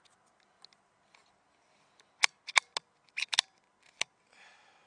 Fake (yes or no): no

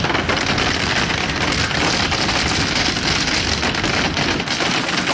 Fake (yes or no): no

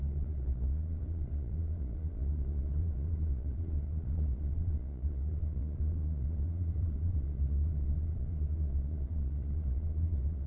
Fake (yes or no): yes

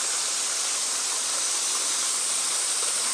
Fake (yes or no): no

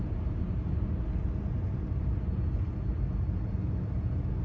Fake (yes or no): no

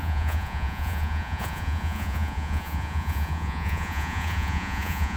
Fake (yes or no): yes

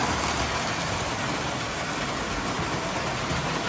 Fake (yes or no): no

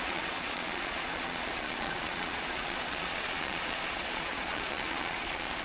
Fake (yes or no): yes